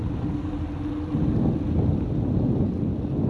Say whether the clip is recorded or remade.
recorded